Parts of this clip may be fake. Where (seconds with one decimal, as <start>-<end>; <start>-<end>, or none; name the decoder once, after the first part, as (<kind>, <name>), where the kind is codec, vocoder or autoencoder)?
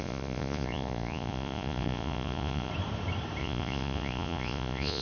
0.0-2.7 (vocoder, Vocos); 3.4-5.0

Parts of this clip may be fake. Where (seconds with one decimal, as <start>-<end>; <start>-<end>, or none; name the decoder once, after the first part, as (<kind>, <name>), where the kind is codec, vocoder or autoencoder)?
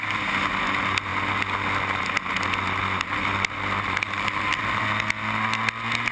none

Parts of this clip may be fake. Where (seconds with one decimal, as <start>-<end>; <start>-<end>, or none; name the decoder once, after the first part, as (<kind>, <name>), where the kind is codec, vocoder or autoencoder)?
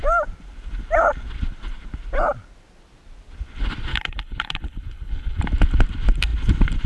3.9-5.4 (codec, HILCodec)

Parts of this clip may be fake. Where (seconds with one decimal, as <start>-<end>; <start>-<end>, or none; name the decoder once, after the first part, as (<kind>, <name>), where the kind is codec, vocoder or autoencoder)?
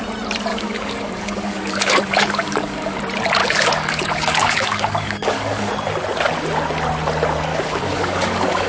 0.5-3.0 (codec, DAC); 3.4-5.7; 7.5-8.7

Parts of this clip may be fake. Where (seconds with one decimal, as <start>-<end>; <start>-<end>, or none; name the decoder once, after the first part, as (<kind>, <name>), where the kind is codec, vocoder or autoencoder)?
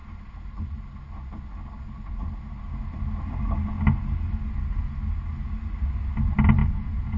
6.6-7.2 (vocoder, Vocos)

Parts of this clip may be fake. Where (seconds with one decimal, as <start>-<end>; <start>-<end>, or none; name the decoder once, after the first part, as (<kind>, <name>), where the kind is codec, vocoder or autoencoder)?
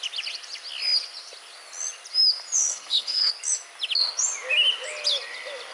2.7-3.3 (codec, HILCodec)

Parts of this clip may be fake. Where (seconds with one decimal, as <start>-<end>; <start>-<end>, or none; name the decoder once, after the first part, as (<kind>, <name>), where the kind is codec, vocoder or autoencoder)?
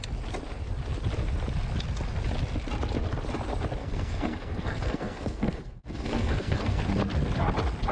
3.8-6.8 (codec, SNAC)